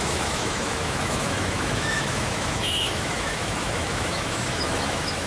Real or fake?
fake